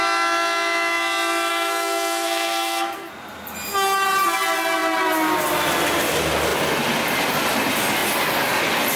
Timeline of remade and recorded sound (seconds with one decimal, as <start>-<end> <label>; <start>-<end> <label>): 0.0-1.5 recorded; 1.5-3.1 remade; 3.1-9.0 recorded